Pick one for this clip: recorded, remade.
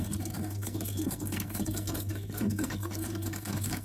remade